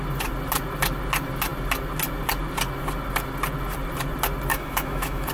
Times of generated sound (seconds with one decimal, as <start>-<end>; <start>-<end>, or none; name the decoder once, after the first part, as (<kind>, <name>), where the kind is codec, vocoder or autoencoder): 4.5-5.3 (autoencoder, DAC-VAE)